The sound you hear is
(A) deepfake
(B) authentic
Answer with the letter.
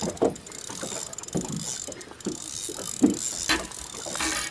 B